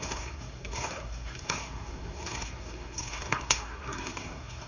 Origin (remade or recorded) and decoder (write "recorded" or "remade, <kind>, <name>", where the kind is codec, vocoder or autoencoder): remade, codec, SNAC